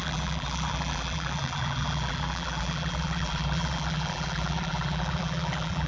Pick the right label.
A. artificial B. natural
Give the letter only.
A